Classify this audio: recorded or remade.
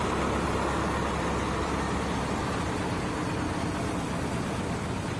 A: recorded